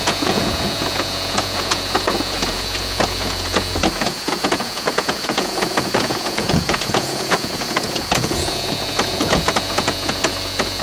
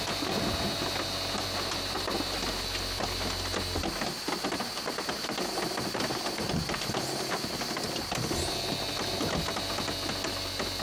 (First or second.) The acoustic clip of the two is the second